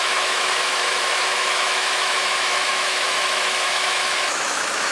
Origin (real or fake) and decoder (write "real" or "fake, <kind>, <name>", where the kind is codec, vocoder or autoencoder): fake, autoencoder, DAC-VAE